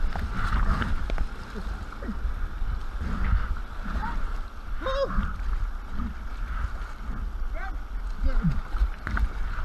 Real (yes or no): yes